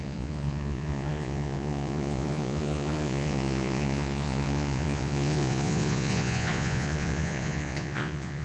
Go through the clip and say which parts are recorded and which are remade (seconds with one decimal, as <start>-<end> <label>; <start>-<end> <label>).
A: 0.0-8.4 remade